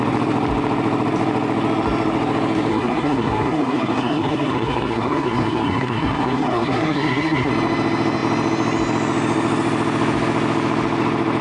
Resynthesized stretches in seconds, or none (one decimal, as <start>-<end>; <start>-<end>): 2.7-7.5

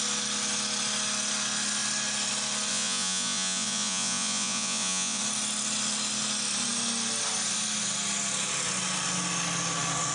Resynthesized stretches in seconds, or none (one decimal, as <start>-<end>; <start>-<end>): 2.7-5.2

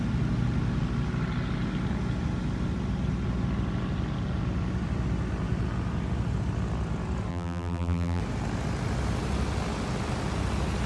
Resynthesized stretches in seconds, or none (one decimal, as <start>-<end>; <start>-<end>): 7.3-8.2

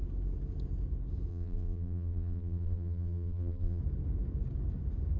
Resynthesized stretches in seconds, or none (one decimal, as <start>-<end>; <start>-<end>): 1.3-3.8

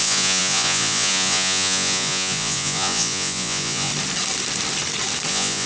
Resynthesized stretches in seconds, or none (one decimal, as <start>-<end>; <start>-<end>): 0.0-3.9; 5.3-5.7